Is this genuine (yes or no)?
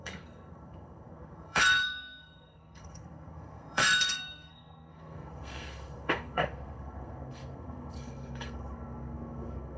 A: no